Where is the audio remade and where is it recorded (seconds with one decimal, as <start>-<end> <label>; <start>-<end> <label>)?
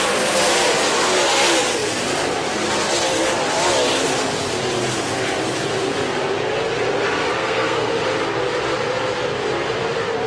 0.0-7.4 recorded; 7.4-7.9 remade; 7.9-10.3 recorded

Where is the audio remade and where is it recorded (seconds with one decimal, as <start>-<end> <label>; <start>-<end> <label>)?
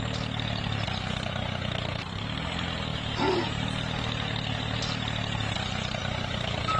0.0-6.8 recorded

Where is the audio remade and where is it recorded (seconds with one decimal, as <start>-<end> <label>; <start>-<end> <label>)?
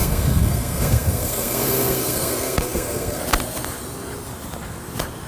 0.0-3.2 remade; 3.2-5.3 recorded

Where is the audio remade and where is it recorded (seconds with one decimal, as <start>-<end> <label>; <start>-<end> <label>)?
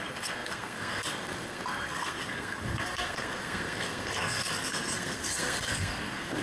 0.0-6.4 remade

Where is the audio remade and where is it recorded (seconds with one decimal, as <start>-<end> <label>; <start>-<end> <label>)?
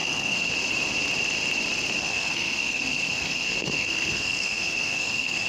0.0-0.5 remade; 0.5-2.0 recorded; 2.0-5.5 remade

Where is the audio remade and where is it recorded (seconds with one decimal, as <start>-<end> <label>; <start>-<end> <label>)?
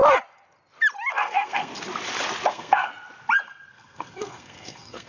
0.0-1.1 recorded; 1.1-1.7 remade; 1.7-2.5 recorded; 2.5-2.9 remade; 2.9-3.7 recorded; 3.7-5.1 remade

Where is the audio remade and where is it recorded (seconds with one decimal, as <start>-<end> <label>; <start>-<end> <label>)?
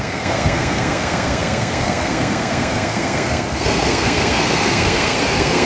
0.0-5.7 remade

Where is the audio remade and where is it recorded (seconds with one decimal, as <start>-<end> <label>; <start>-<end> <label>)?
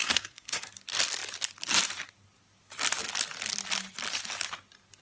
0.0-0.7 remade; 0.7-5.0 recorded